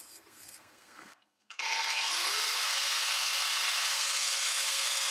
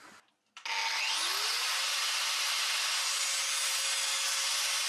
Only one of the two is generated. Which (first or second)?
first